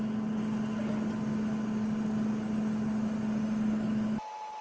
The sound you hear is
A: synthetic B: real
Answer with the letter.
B